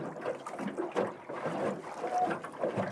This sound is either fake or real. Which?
real